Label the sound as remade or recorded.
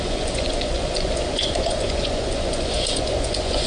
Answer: remade